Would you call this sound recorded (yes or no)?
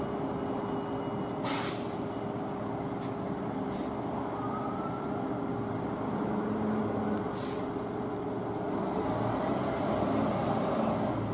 yes